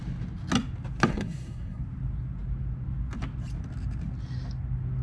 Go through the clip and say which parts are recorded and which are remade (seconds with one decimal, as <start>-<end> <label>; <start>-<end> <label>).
0.0-1.1 recorded; 1.1-1.8 remade; 1.8-5.0 recorded